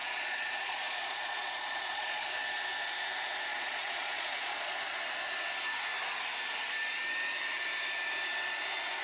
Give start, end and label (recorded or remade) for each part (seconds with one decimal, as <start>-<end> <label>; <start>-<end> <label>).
0.0-2.2 remade; 2.2-3.5 recorded; 3.5-4.7 remade; 4.7-9.0 recorded